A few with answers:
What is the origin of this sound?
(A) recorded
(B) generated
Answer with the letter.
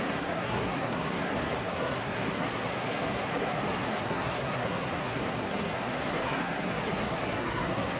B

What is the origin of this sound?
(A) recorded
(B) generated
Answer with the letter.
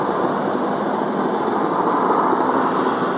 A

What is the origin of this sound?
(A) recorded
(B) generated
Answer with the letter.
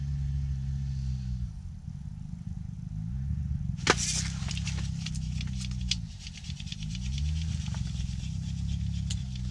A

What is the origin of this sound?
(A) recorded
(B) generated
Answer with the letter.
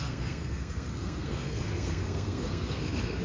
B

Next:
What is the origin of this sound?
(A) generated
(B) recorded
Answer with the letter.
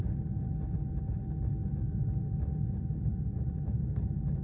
B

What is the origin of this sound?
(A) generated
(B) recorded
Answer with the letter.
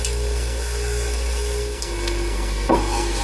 A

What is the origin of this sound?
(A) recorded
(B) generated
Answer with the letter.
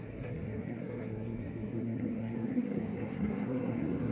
B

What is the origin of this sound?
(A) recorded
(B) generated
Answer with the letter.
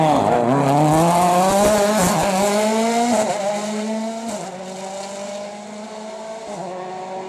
A